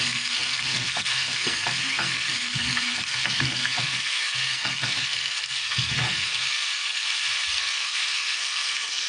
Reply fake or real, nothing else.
fake